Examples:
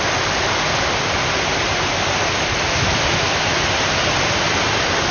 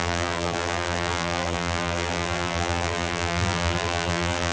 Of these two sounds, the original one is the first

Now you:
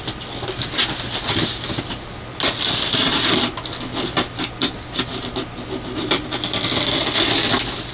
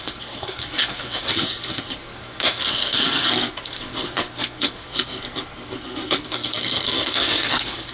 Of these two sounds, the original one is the first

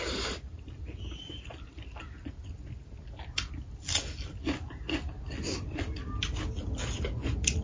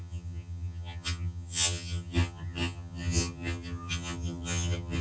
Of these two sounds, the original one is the first